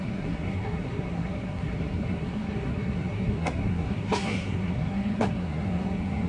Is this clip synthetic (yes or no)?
yes